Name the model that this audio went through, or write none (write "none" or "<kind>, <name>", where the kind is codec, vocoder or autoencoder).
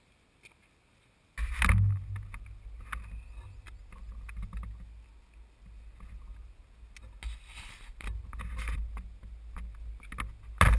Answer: none